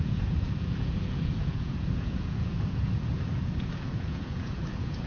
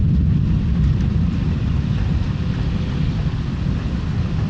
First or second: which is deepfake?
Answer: first